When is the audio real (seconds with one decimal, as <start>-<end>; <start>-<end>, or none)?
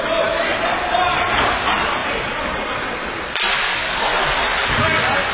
0.0-5.3